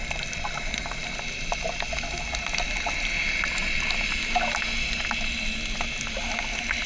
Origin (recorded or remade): recorded